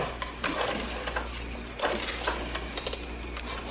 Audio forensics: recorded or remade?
recorded